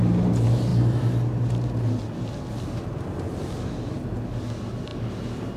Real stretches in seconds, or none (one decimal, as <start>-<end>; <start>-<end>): 0.0-5.6